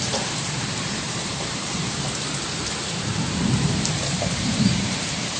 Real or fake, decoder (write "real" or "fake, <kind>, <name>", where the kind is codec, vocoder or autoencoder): fake, vocoder, BigVGAN v2